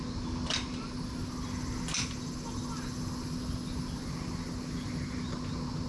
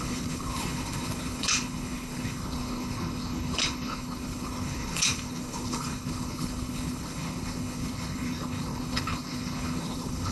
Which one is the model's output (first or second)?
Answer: second